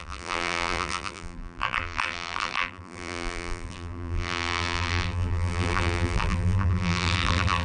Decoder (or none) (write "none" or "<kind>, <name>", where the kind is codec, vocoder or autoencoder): vocoder, BigVGAN v2